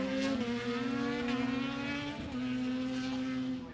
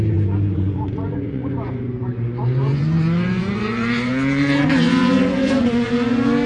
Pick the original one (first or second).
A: first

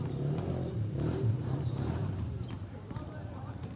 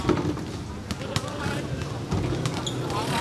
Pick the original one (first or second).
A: second